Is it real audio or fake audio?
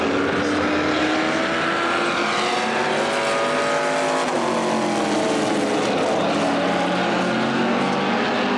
real